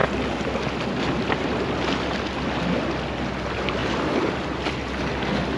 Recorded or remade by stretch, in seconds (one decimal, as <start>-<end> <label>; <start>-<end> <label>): 0.0-5.6 recorded